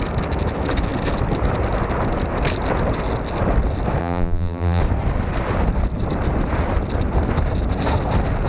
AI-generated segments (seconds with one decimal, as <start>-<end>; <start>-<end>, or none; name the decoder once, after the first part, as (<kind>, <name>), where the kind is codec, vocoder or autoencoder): 4.0-4.8 (vocoder, BigVGAN v2)